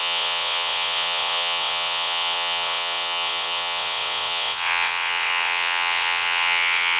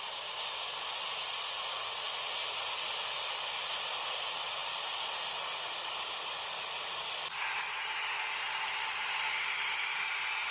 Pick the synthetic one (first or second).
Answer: first